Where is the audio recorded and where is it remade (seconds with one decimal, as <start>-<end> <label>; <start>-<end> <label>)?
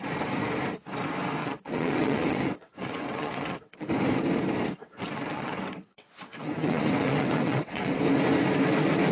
0.0-1.4 recorded; 1.4-3.9 remade; 3.9-4.8 recorded; 4.8-8.0 remade; 8.0-9.1 recorded